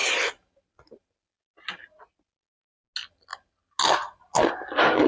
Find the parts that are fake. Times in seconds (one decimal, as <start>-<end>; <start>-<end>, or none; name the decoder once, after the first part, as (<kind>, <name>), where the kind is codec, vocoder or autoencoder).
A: none